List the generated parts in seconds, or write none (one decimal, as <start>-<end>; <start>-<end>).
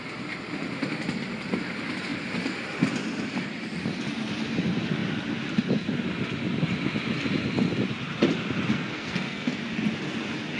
8.7-9.6